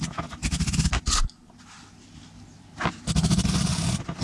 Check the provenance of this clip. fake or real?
real